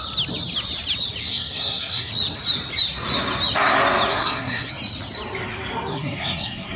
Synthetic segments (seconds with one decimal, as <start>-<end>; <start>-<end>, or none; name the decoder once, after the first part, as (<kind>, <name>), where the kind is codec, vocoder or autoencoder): 1.2-2.1 (codec, SNAC); 4.1-4.7; 5.9-6.8